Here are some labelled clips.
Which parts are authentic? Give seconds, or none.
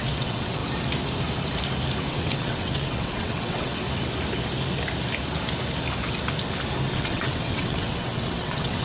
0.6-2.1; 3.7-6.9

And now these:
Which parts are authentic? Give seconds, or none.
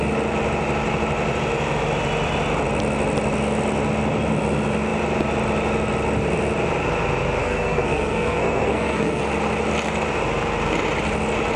0.0-7.4; 9.2-11.6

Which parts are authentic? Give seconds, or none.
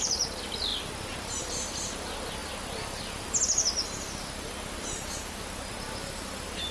0.0-6.7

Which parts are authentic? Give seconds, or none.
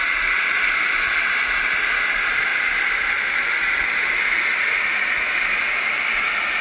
0.0-6.6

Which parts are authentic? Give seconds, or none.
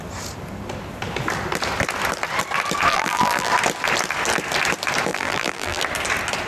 0.0-2.9; 3.5-5.1; 5.8-6.5